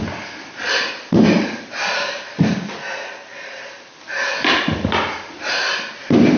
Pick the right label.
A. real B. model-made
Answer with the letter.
A